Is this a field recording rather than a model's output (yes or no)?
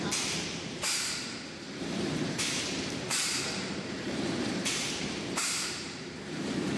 no